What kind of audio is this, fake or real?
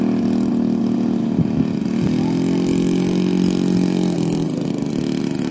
real